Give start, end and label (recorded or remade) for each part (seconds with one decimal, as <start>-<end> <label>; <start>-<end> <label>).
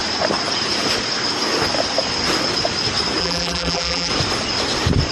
0.0-3.2 recorded; 3.2-4.1 remade; 4.1-5.1 recorded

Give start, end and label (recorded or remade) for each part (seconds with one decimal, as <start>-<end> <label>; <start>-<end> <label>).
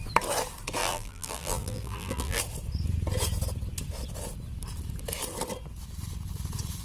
0.0-0.8 recorded; 0.8-2.4 remade; 2.4-6.8 recorded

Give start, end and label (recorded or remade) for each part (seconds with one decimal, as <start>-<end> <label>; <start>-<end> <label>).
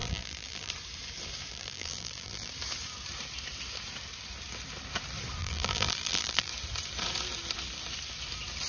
0.0-0.7 remade; 0.7-1.5 recorded; 1.5-2.5 remade; 2.5-5.4 recorded; 5.4-6.5 remade; 6.5-8.7 recorded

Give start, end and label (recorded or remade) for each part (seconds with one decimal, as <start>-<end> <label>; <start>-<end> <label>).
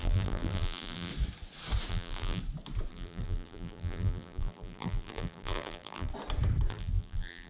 0.0-1.1 remade; 1.1-1.9 recorded; 1.9-2.4 remade; 2.4-2.9 recorded; 2.9-6.1 remade; 6.1-6.7 recorded; 6.7-7.5 remade